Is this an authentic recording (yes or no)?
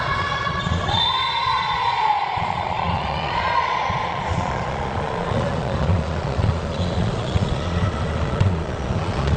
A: no